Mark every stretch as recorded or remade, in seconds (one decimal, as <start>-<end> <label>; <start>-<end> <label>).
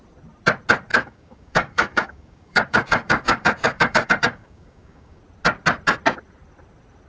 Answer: 0.0-0.9 recorded; 0.9-5.2 remade; 5.2-7.1 recorded